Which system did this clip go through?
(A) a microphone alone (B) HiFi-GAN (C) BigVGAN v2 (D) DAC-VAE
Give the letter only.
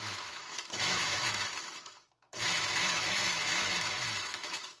D